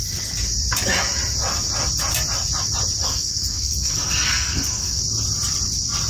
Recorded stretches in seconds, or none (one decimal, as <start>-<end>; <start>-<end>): 0.0-3.0; 5.0-6.1